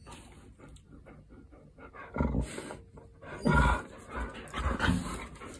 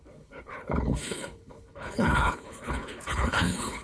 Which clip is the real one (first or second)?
first